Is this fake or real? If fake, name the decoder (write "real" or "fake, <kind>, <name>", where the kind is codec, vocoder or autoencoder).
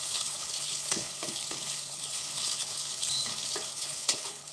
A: fake, codec, HILCodec